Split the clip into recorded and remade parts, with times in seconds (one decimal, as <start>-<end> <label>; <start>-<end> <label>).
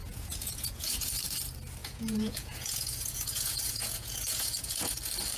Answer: 0.0-1.1 remade; 1.1-1.8 recorded; 1.8-5.0 remade; 5.0-5.4 recorded